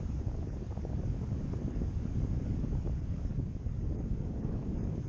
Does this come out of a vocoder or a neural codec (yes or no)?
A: yes